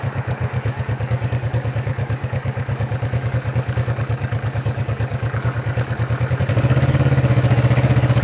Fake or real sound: fake